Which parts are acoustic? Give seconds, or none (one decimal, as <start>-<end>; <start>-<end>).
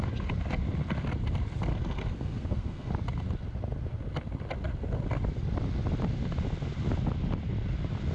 0.0-1.7; 2.9-8.1